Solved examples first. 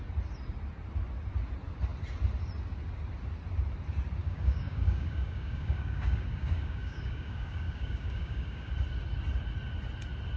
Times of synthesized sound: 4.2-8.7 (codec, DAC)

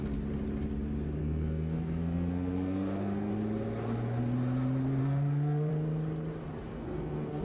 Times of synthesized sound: 1.2-3.3 (codec, SNAC); 5.0-5.7; 6.7-7.4

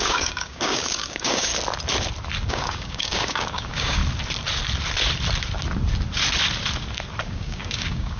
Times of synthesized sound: 0.0-1.5 (codec, DAC); 2.5-4.0; 7.2-8.2

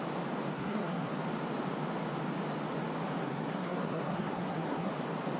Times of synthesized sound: 0.5-1.1 (codec, SNAC); 3.2-4.9

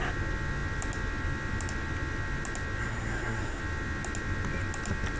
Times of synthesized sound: 2.8-3.6 (codec, SNAC)

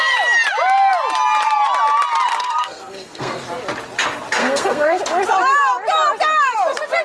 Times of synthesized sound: 2.3-3.4 (codec, SNAC); 4.4-5.0

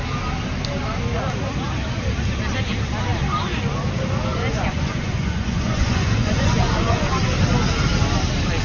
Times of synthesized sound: 4.3-7.2 (vocoder, Vocos)